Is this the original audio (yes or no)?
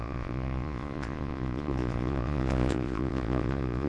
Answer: no